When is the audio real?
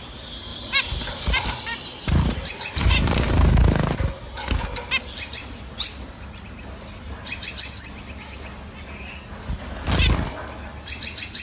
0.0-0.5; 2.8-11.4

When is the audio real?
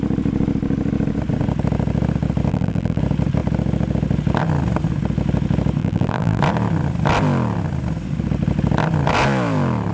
0.0-2.5; 3.0-5.8; 6.4-9.9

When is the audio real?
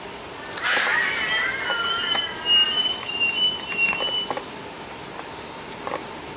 0.0-6.4